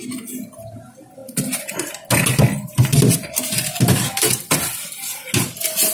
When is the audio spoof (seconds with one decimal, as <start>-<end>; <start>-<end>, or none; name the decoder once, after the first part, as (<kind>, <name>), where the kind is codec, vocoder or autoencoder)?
none

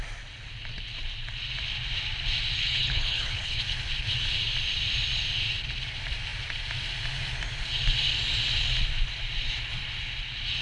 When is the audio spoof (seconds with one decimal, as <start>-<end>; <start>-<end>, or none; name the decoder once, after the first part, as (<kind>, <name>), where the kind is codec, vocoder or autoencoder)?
2.6-3.6 (codec, HILCodec)

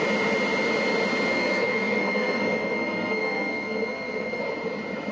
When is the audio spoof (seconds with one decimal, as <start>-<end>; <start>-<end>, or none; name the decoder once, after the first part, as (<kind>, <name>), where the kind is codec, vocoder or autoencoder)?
1.3-4.4 (codec, SNAC)

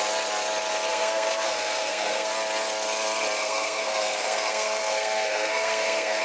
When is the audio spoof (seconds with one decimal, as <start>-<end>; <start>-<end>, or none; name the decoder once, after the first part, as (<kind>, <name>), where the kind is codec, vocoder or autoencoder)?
0.9-2.3 (codec, SNAC); 3.4-6.2

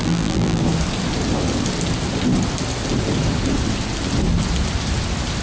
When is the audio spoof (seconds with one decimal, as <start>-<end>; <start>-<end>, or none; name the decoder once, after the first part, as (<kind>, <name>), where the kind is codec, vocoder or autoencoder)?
0.0-0.6 (vocoder, BigVGAN v2)

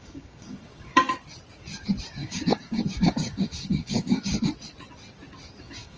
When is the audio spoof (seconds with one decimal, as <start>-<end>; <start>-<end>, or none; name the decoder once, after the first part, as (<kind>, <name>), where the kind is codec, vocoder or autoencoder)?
0.0-0.9 (codec, DAC); 2.1-4.3; 5.6-6.0

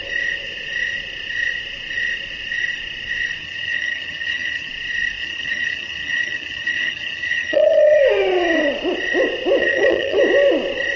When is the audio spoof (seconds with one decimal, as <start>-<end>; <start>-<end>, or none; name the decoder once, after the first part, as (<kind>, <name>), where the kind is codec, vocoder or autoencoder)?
3.4-4.7 (vocoder, HiFi-GAN); 5.2-8.0; 9.6-10.2